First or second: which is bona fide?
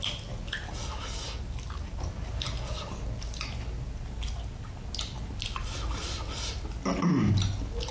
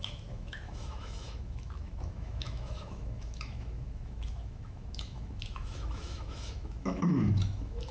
first